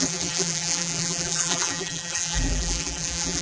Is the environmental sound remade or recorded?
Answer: remade